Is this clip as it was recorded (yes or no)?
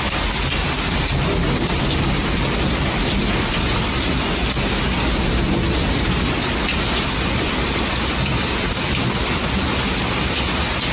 yes